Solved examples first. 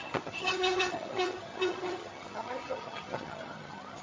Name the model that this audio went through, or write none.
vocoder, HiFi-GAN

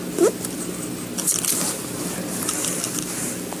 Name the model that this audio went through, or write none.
none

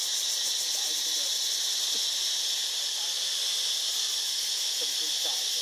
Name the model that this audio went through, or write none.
none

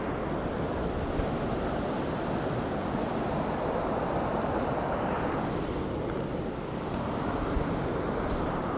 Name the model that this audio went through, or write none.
none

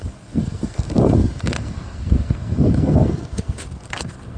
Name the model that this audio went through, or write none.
codec, SNAC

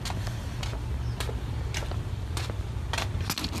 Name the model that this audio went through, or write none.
none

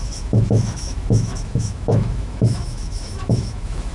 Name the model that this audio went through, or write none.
autoencoder, DAC-VAE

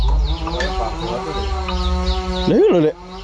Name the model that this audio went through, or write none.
none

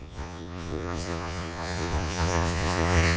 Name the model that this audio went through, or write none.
vocoder, Vocos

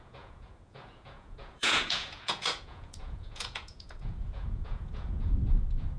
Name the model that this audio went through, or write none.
vocoder, Vocos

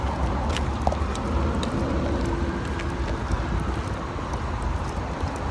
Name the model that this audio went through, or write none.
none